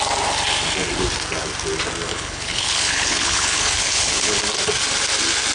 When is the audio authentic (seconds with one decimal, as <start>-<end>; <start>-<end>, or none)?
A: 0.0-2.1; 4.4-5.5